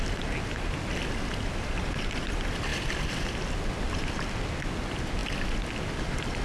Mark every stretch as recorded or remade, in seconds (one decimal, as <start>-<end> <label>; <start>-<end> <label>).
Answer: 0.0-6.4 recorded